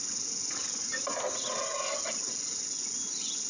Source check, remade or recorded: recorded